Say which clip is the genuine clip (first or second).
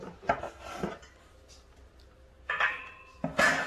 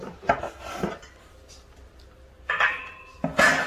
first